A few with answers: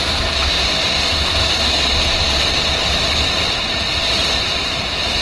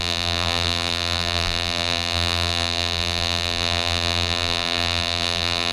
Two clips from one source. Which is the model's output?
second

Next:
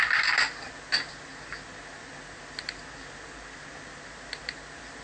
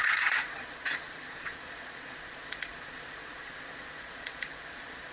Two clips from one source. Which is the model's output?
second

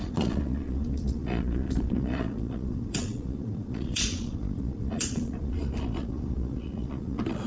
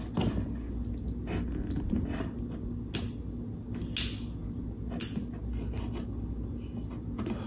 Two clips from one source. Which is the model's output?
first